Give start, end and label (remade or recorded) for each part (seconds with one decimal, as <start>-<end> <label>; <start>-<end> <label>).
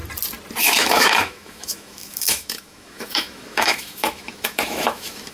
0.0-0.6 recorded; 0.6-5.3 remade